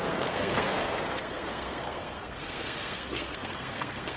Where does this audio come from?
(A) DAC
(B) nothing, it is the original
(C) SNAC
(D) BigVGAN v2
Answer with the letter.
C